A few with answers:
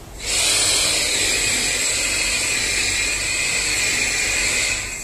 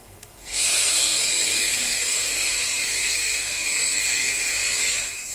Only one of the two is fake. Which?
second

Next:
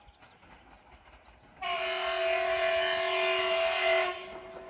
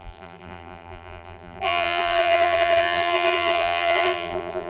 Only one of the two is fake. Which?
second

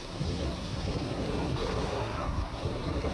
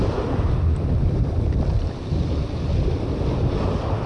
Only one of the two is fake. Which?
first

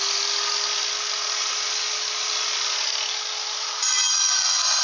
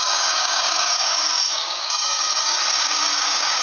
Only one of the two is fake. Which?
second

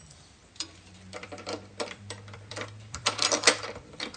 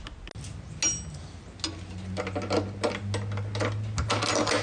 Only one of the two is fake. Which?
first